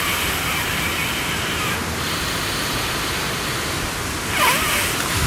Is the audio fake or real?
real